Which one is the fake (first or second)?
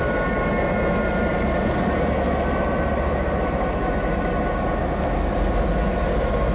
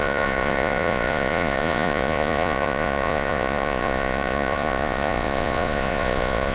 second